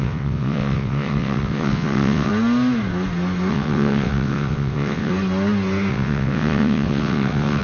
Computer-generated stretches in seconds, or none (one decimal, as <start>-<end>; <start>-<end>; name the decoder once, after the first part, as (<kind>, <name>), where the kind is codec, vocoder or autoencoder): 0.0-2.3 (vocoder, WaveNeXt); 3.5-5.1; 5.9-7.6